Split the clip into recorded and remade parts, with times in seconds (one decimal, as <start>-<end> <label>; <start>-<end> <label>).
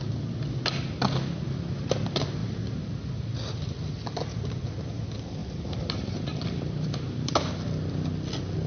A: 0.0-2.4 recorded; 2.4-3.0 remade; 3.0-5.4 recorded; 5.4-7.5 remade; 7.5-8.7 recorded